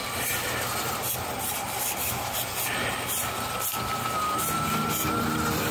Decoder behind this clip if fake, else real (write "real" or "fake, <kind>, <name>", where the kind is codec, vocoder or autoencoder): real